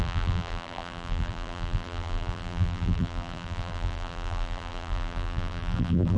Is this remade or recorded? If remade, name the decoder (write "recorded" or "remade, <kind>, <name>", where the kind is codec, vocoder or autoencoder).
remade, vocoder, BigVGAN v2